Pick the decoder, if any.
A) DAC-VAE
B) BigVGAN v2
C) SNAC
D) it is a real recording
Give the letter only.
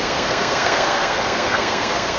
C